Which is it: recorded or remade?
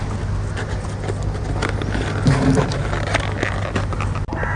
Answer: recorded